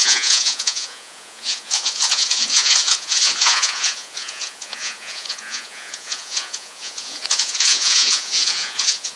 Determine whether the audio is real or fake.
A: fake